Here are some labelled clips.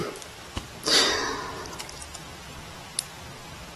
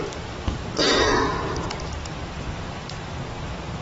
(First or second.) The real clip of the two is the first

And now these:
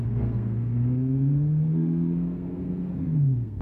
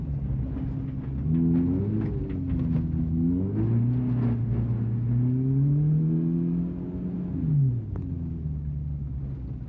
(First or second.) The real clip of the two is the second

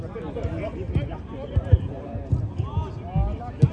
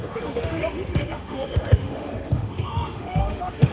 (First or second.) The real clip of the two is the first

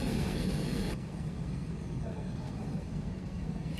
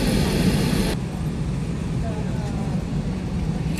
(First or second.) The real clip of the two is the second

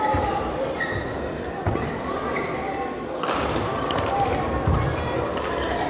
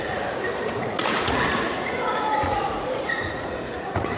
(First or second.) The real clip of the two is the first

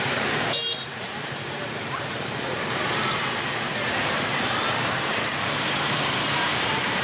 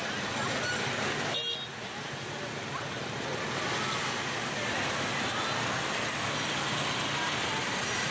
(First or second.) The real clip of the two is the second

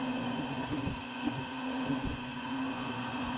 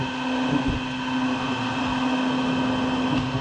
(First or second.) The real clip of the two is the second